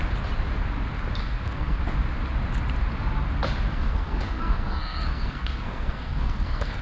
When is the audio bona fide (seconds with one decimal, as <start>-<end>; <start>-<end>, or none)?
0.0-1.2; 1.8-3.7